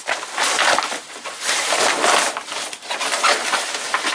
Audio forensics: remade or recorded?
recorded